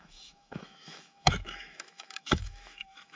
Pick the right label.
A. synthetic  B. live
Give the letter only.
A